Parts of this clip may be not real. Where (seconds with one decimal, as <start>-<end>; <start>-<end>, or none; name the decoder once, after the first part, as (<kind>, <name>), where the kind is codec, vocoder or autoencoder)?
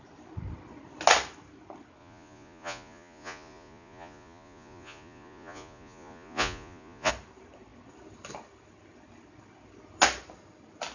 2.0-7.1 (vocoder, Vocos)